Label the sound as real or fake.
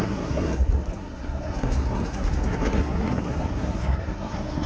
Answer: fake